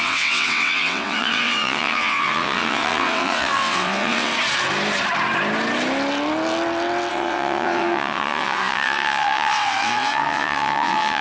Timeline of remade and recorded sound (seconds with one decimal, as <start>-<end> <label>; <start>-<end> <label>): 0.0-4.3 remade; 4.3-7.1 recorded; 7.1-11.2 remade

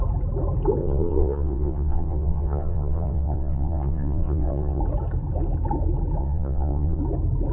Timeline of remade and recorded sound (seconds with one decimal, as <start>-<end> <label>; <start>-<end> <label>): 0.0-0.8 recorded; 0.8-4.8 remade; 4.8-6.2 recorded; 6.2-7.0 remade; 7.0-7.5 recorded

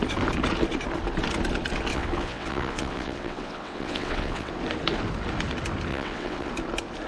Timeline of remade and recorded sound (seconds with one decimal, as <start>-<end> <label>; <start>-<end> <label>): 0.0-1.9 recorded; 1.9-4.5 remade; 4.5-5.9 recorded; 5.9-6.5 remade; 6.5-7.1 recorded

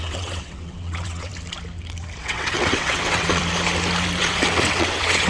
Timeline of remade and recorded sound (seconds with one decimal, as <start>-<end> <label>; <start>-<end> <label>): 0.0-1.3 remade; 1.3-2.2 recorded; 2.2-3.4 remade; 3.4-4.2 recorded; 4.2-5.3 remade

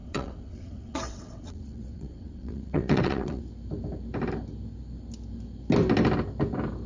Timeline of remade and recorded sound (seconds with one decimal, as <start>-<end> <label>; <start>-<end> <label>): 0.0-3.4 remade; 3.4-6.9 recorded